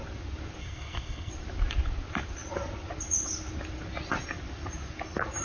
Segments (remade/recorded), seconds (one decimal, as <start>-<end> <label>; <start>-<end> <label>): 0.0-0.6 recorded; 0.6-1.3 remade; 1.3-5.4 recorded